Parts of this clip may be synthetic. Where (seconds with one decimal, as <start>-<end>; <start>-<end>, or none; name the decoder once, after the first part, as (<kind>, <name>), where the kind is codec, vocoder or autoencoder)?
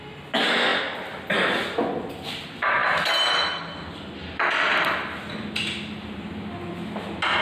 2.8-6.7 (vocoder, BigVGAN v2)